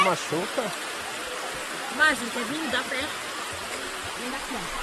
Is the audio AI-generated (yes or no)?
no